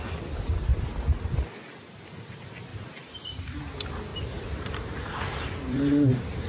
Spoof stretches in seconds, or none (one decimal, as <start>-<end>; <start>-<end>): 2.7-3.6; 4.1-6.5